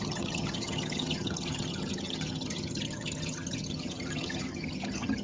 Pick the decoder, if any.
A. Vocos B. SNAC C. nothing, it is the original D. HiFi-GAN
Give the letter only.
D